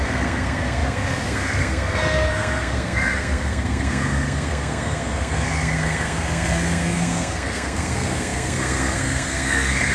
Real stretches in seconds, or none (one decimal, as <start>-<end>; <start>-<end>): none